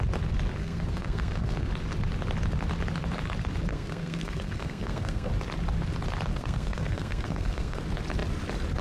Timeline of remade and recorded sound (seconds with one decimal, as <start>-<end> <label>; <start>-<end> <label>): 0.0-0.6 recorded; 0.6-1.7 remade; 1.7-3.7 recorded; 3.7-5.3 remade; 5.3-6.3 recorded; 6.3-7.8 remade; 7.8-8.8 recorded